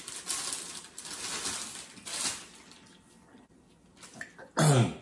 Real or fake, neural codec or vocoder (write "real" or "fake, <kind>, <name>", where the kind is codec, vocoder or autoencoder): real